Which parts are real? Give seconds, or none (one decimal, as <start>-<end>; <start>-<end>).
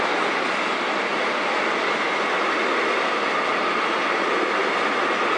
0.0-5.4